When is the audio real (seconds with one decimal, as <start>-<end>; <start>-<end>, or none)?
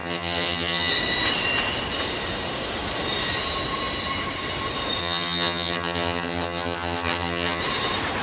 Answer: 0.9-5.0; 7.6-8.2